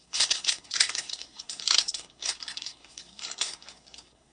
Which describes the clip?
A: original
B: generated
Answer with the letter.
B